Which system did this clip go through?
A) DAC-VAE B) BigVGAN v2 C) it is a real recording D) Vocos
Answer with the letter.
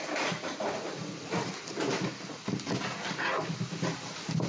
C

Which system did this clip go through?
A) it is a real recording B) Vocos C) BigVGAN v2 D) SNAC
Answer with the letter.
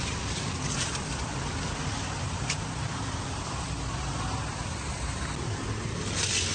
A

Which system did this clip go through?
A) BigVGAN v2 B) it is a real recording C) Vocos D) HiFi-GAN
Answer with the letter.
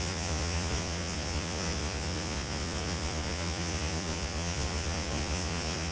C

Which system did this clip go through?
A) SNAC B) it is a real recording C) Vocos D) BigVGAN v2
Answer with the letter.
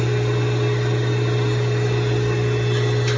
B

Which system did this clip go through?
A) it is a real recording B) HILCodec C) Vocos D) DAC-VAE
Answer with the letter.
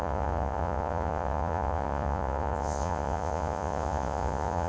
C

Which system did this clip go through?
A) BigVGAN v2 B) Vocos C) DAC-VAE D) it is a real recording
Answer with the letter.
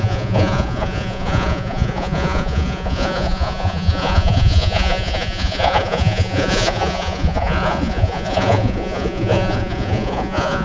B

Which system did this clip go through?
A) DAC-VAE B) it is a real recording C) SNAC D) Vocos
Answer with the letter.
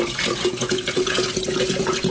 D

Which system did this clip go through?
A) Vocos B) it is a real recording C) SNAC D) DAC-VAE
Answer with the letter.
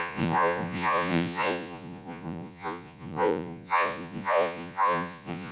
A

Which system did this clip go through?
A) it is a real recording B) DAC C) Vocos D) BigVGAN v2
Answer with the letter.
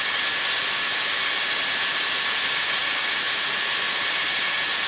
A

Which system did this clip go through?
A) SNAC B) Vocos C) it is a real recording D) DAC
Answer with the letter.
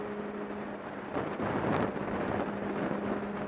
C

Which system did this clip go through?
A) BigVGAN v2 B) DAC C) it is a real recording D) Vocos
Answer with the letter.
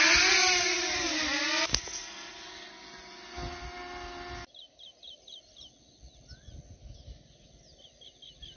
C